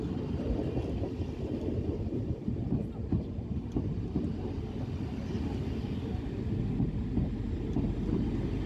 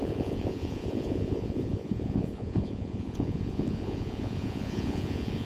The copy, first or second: second